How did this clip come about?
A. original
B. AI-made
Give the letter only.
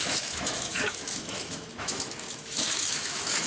B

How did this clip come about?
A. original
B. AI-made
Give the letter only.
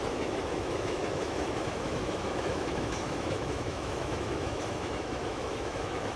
B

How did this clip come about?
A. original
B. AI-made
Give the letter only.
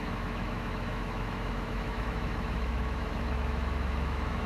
B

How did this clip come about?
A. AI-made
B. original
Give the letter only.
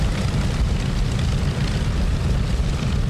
B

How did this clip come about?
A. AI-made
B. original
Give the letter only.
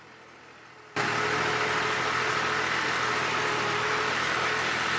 B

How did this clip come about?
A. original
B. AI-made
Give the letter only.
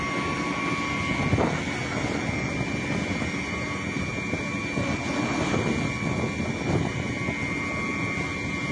A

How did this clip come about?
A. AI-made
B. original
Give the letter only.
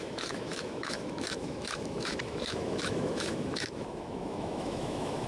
A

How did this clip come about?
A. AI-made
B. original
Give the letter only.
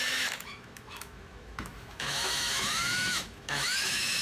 A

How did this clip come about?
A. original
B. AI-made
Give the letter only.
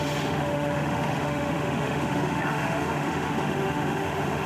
B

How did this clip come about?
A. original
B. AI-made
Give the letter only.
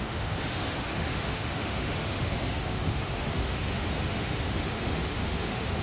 B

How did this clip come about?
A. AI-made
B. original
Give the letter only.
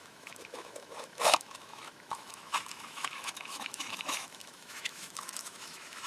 A